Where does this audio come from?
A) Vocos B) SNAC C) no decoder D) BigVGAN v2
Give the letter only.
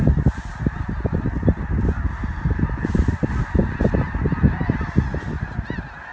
C